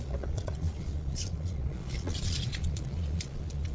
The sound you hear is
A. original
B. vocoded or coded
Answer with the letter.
B